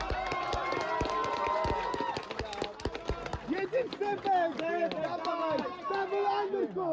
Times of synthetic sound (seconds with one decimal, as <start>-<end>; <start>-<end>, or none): none